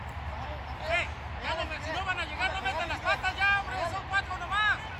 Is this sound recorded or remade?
recorded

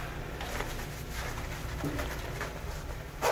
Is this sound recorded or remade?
remade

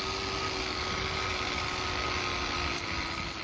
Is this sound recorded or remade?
recorded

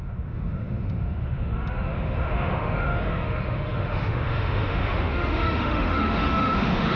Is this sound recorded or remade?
remade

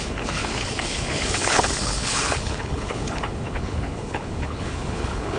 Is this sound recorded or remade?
remade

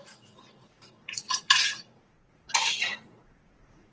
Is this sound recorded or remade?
remade